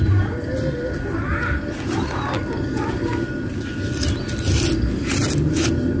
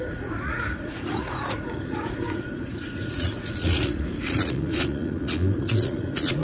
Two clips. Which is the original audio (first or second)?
first